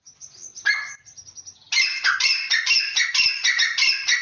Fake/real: real